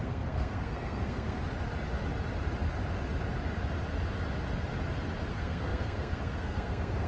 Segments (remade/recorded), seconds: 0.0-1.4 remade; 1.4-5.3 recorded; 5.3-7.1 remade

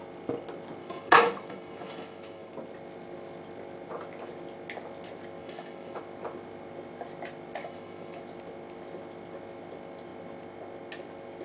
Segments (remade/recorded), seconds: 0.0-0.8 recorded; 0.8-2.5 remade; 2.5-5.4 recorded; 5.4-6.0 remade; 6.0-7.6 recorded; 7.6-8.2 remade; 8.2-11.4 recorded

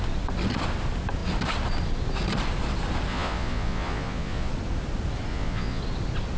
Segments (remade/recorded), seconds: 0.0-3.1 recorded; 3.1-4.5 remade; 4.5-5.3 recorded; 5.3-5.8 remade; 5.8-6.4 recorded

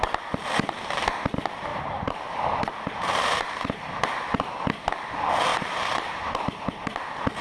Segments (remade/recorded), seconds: 0.0-1.7 recorded; 1.7-4.0 remade; 4.0-5.5 recorded; 5.5-7.0 remade; 7.0-7.4 recorded

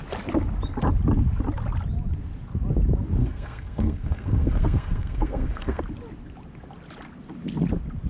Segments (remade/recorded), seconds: 0.0-3.2 recorded; 3.2-5.8 remade; 5.8-8.1 recorded